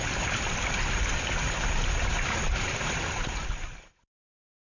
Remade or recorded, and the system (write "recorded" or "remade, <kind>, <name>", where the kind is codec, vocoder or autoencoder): recorded